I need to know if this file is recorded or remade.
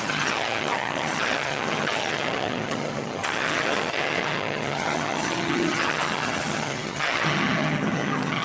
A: remade